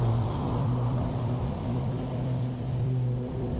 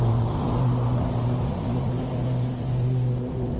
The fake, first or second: first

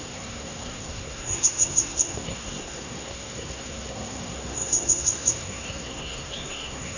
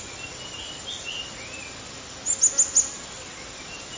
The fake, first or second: first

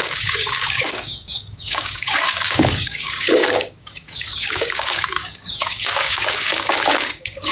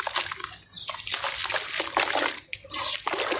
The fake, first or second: first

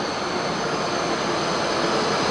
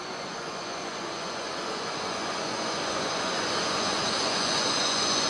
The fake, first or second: second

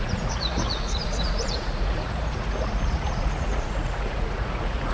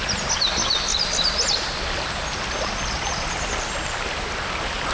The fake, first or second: first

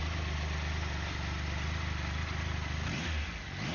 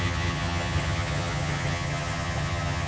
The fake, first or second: second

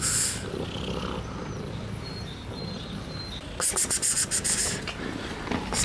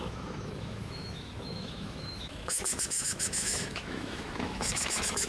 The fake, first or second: second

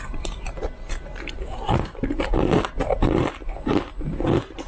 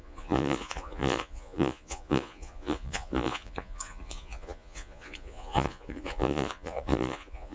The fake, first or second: second